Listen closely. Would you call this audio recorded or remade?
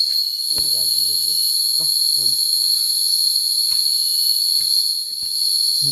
recorded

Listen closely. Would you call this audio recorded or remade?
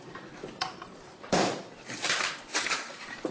remade